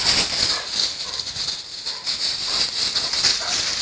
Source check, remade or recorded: recorded